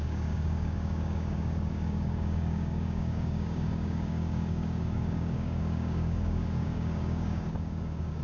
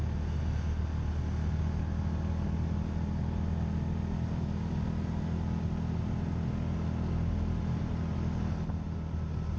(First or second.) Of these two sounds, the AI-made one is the first